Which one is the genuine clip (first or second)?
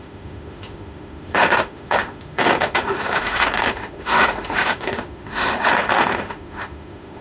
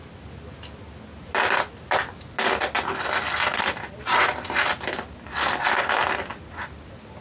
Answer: second